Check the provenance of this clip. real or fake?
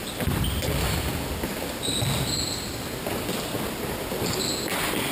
real